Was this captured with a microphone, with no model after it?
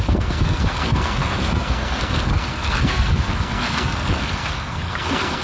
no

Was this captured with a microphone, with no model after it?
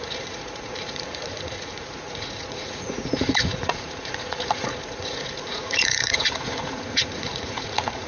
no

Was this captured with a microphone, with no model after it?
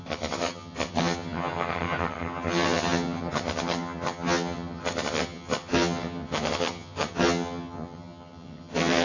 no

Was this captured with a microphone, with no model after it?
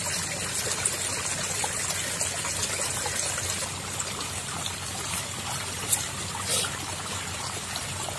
yes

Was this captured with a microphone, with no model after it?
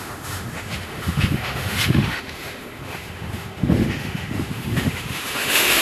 no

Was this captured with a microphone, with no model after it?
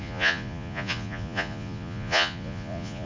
no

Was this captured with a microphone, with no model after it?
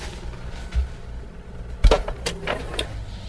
yes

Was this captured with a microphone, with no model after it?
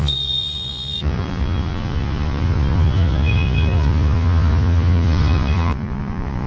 no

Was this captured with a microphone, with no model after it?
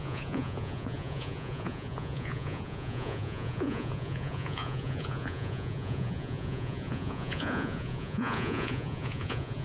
no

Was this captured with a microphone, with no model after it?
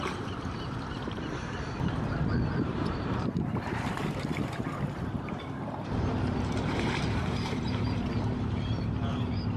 no